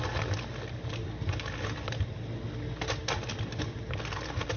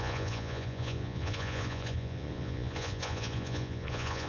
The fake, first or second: second